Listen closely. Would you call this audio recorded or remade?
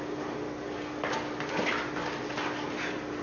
recorded